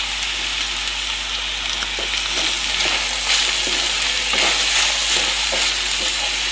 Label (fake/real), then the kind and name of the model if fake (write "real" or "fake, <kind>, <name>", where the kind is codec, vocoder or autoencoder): real